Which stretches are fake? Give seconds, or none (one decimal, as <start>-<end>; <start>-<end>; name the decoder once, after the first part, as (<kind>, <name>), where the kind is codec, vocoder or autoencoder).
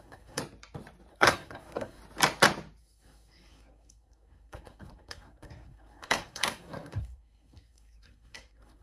0.0-0.4 (codec, SNAC); 1.1-2.0; 2.8-8.8